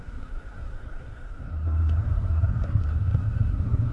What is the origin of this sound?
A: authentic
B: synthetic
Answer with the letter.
B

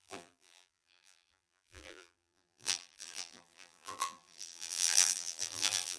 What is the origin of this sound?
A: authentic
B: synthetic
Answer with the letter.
B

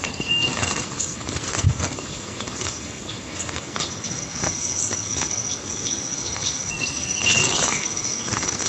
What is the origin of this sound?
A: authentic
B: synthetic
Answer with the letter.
B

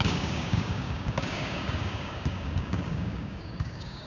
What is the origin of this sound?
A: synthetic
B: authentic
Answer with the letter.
A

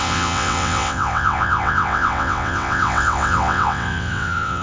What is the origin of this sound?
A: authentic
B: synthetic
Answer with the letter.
B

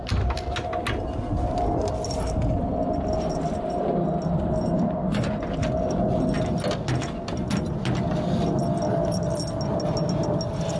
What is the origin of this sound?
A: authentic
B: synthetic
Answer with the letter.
A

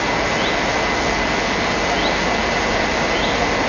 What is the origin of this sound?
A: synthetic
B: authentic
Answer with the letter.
B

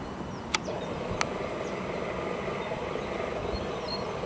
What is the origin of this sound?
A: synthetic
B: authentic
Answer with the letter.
B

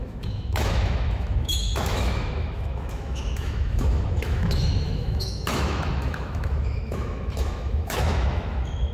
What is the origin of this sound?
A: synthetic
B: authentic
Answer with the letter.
A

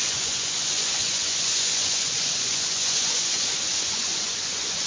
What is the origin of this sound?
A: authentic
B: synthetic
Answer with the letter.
B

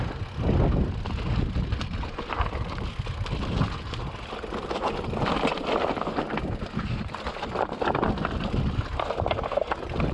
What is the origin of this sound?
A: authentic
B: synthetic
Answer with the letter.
A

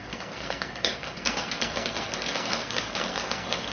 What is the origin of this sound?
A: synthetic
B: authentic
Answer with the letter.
A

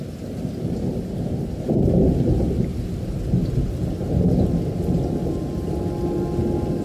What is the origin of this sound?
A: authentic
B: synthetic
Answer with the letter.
A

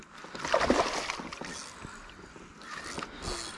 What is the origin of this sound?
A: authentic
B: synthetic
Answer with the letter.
A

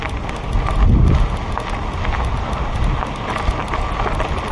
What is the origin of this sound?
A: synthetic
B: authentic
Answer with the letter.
B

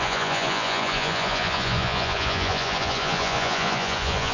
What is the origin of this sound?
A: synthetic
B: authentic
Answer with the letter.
A